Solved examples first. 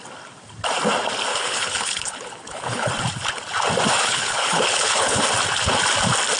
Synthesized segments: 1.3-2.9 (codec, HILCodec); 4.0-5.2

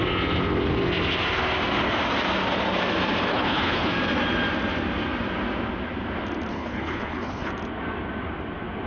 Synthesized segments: 3.3-3.9 (codec, HILCodec); 6.5-7.5

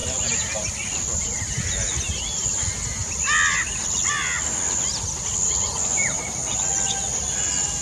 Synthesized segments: none

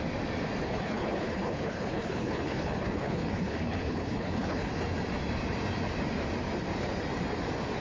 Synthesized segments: 0.6-4.7 (codec, HILCodec)